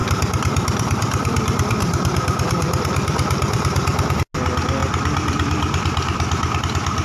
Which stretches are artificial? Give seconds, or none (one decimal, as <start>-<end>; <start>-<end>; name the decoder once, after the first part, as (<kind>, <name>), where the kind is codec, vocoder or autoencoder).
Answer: 0.0-4.2 (vocoder, BigVGAN v2); 4.8-6.6

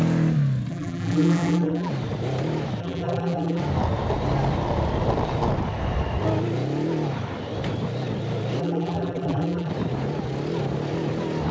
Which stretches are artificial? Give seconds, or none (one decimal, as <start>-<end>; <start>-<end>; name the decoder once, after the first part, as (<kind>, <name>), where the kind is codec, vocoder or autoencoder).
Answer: 0.7-1.9 (vocoder, BigVGAN v2); 2.8-3.6; 8.6-9.7

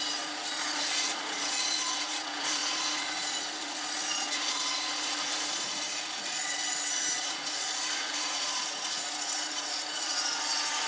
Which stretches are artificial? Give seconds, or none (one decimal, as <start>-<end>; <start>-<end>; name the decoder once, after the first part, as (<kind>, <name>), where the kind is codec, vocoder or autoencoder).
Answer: 0.0-10.9 (vocoder, Vocos)

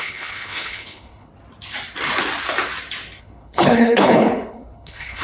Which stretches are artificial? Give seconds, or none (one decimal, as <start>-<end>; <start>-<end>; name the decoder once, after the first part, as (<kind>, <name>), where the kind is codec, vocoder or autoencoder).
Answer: 0.0-1.3 (codec, HILCodec); 3.2-5.2

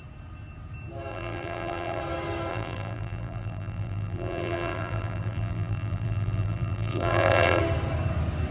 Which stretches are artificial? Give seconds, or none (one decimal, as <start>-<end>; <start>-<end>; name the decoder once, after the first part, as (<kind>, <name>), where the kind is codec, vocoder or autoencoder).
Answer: 1.1-2.0 (vocoder, BigVGAN v2); 2.5-7.6

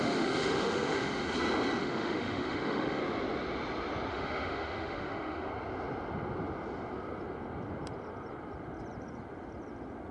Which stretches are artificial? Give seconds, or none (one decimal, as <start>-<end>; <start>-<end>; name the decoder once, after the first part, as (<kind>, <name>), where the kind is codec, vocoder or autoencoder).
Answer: 0.0-1.2 (autoencoder, DAC-VAE); 1.8-3.0; 4.1-5.5

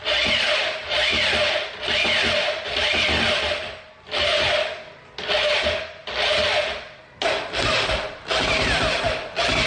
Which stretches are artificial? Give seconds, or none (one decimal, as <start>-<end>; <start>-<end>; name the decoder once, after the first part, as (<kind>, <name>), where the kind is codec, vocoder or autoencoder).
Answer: none